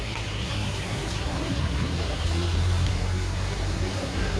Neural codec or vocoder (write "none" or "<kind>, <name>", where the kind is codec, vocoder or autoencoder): codec, SNAC